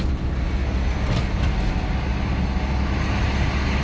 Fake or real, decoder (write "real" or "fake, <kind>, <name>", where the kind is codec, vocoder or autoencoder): real